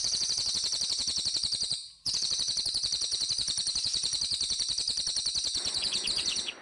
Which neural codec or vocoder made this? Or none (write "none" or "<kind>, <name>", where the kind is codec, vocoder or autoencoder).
vocoder, Vocos